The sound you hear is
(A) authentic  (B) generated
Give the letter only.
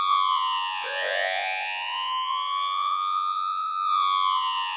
B